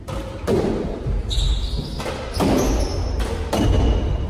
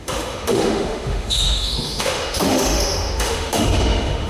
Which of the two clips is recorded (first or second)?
first